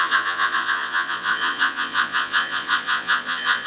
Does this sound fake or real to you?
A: fake